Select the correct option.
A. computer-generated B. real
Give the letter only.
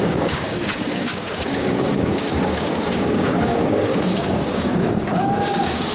A